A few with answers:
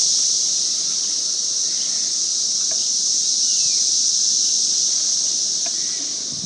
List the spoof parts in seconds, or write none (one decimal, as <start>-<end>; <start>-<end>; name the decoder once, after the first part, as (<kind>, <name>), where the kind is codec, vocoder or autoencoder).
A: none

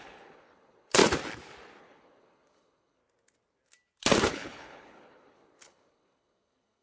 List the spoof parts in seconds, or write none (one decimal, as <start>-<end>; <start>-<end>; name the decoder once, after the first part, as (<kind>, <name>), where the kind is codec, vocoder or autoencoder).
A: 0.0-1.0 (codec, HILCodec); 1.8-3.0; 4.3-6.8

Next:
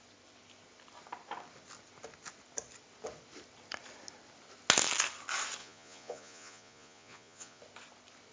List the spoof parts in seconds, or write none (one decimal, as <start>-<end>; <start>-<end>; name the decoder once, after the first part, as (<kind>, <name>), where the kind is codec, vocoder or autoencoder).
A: 5.6-7.6 (vocoder, Vocos)